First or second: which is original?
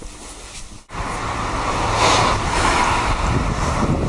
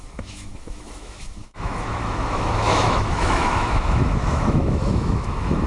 first